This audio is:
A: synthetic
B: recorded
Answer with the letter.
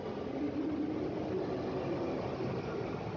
B